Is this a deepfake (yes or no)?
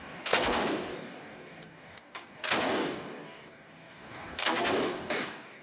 yes